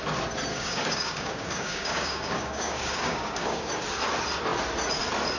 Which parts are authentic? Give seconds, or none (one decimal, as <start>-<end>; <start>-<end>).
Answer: 0.0-0.5; 3.7-5.4